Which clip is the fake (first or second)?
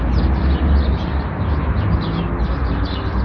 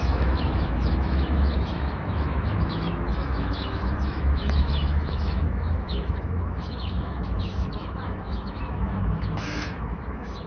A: second